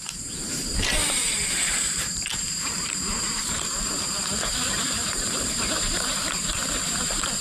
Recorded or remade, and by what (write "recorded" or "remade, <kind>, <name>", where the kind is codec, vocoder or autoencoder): remade, vocoder, BigVGAN v2